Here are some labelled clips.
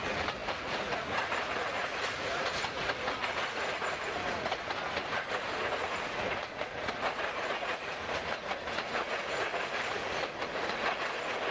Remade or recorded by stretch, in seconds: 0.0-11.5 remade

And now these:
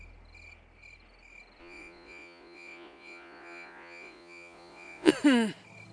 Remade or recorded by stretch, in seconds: 0.0-1.6 recorded; 1.6-5.1 remade; 5.1-5.9 recorded

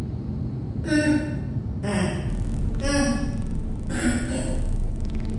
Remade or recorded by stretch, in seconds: 0.0-5.4 recorded

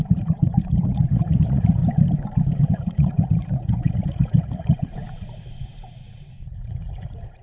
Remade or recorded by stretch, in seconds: 0.0-1.8 remade; 1.8-2.7 recorded; 2.7-7.4 remade

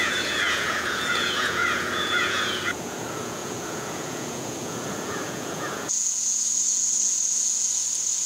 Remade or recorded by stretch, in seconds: 0.0-8.3 remade

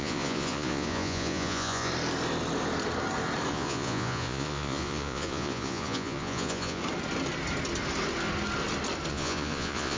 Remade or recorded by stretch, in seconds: 0.0-1.9 remade; 1.9-3.5 recorded; 3.5-6.8 remade; 6.8-9.1 recorded; 9.1-10.0 remade